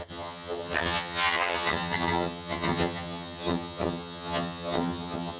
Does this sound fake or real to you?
fake